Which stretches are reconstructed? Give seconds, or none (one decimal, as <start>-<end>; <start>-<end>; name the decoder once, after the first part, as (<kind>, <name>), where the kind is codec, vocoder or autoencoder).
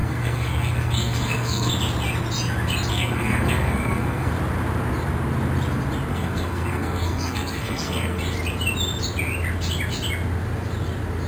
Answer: 0.0-1.7 (codec, SNAC); 2.9-4.3; 6.1-8.2